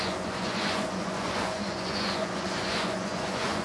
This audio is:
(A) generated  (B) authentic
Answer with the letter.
A